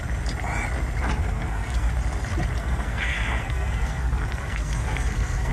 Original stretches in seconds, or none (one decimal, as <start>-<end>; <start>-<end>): 0.0-1.2; 1.9-2.6